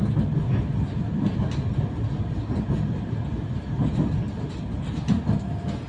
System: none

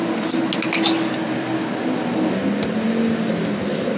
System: none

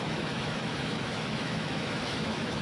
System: autoencoder, DAC-VAE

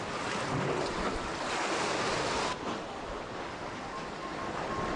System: none